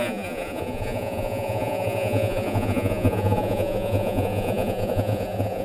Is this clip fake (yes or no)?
yes